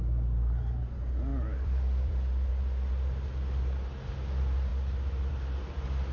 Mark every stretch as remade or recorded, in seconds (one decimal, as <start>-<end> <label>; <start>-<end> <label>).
0.0-1.3 recorded; 1.3-2.5 remade; 2.5-4.7 recorded; 4.7-5.3 remade; 5.3-6.1 recorded